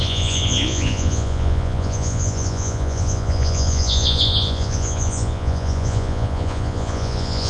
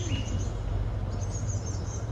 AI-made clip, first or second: first